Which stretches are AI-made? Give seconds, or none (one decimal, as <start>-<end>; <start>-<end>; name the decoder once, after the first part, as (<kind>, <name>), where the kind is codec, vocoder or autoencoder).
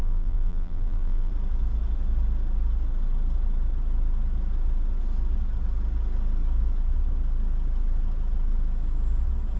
0.0-1.3 (vocoder, BigVGAN v2)